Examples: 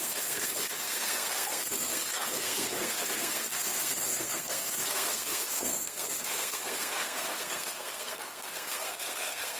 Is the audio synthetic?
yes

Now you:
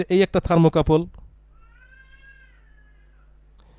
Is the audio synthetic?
no